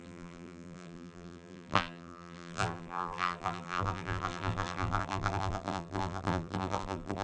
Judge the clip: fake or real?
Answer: fake